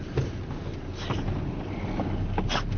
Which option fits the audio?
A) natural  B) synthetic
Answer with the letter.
A